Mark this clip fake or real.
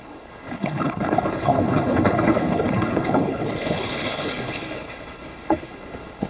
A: fake